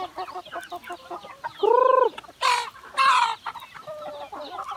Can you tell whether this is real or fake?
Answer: real